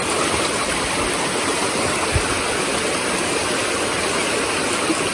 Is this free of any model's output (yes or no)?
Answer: yes